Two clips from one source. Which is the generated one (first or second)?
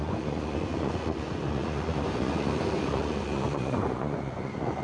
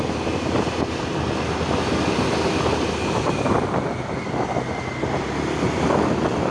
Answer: first